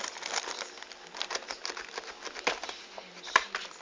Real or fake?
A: real